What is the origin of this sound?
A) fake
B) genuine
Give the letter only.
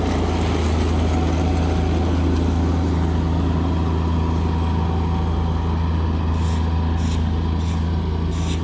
B